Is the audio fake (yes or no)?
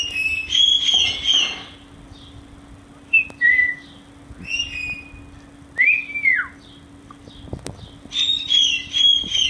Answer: no